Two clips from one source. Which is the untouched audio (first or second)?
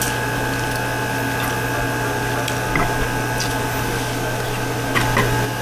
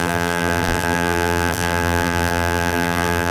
first